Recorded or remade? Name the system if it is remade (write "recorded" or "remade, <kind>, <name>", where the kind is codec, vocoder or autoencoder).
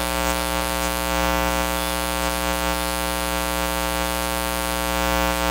recorded